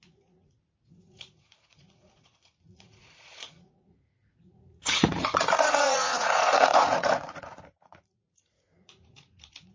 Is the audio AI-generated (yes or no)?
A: yes